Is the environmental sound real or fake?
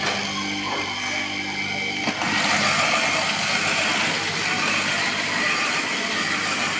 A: real